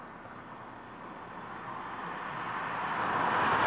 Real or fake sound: real